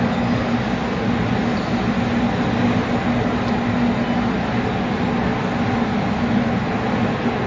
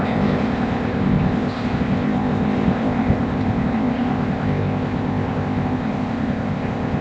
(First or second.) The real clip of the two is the first